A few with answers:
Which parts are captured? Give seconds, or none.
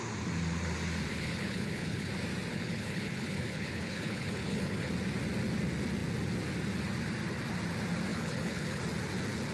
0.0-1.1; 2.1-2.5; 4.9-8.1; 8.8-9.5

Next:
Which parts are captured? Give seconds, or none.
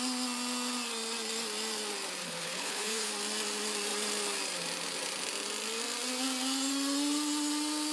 0.0-2.2; 3.1-7.9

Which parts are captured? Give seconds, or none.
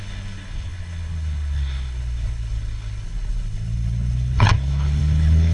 none